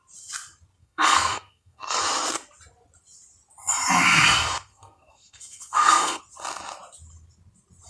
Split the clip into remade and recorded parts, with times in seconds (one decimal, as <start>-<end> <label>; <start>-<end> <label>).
0.0-0.8 recorded; 0.8-2.0 remade; 2.0-4.7 recorded; 4.7-6.2 remade; 6.2-7.9 recorded

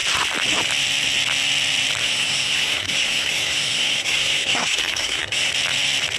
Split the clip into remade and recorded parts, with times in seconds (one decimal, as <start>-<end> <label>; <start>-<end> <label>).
0.0-2.0 recorded; 2.0-5.5 remade; 5.5-6.2 recorded

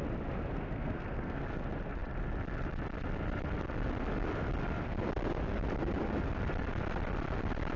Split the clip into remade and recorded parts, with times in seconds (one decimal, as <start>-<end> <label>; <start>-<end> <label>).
0.0-0.5 recorded; 0.5-1.4 remade; 1.4-7.8 recorded

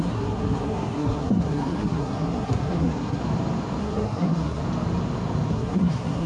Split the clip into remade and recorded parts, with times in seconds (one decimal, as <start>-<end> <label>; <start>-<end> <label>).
0.0-3.2 remade; 3.2-3.8 recorded; 3.8-4.6 remade; 4.6-5.5 recorded; 5.5-6.3 remade

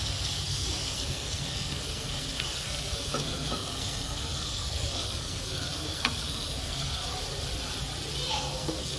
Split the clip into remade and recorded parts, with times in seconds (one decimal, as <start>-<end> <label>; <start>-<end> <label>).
0.0-7.0 remade; 7.0-8.3 recorded; 8.3-9.0 remade